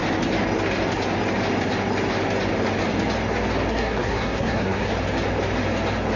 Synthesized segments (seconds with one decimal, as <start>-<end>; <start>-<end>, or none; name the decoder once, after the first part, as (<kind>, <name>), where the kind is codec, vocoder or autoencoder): 3.7-4.9 (codec, SNAC)